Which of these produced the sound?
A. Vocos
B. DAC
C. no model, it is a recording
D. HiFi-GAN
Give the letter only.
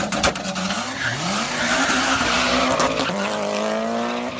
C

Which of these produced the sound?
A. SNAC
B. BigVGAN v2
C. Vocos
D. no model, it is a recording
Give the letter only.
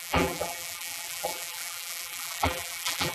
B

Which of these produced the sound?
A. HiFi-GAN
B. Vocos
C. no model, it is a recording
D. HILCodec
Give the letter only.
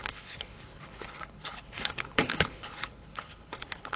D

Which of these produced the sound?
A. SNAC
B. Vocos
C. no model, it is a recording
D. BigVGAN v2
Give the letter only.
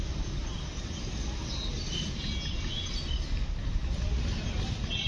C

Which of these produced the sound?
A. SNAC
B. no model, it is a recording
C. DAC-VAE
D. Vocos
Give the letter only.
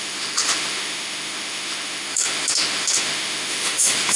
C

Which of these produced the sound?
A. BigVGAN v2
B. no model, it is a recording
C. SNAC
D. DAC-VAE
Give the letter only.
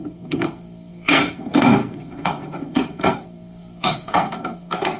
C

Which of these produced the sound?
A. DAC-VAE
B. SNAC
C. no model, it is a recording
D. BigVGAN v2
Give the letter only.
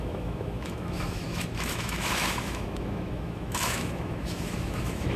A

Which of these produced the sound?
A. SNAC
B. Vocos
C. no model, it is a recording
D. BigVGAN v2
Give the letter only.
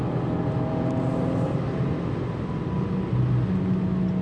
C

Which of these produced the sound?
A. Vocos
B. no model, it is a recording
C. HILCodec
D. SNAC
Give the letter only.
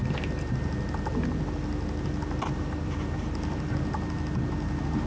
B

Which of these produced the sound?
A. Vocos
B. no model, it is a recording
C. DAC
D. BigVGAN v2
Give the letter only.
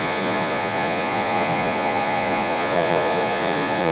A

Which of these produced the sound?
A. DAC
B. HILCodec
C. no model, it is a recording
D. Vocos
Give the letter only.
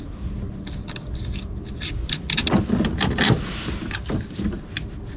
C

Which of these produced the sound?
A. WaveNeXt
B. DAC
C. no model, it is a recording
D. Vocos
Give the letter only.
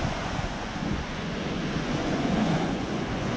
D